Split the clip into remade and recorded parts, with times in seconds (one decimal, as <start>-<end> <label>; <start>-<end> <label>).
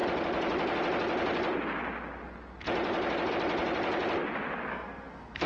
0.0-4.7 recorded; 4.7-5.5 remade